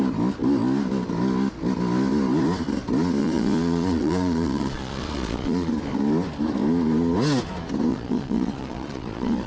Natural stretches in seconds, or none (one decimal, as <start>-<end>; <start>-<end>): 0.0-3.2; 5.7-7.9